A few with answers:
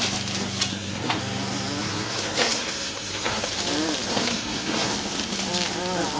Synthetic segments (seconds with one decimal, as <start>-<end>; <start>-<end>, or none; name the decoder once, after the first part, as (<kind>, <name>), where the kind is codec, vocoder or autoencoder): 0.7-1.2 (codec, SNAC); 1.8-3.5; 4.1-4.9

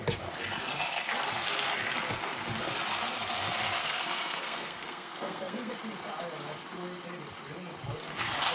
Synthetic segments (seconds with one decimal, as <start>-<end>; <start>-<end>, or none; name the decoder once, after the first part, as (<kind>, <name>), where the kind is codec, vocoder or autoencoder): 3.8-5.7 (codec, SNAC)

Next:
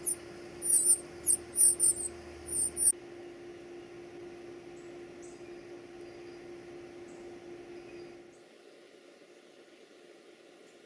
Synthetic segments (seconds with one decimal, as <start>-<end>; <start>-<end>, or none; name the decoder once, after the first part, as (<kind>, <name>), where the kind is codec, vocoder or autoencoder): none